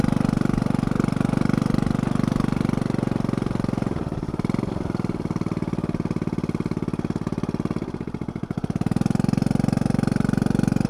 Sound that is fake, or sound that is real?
real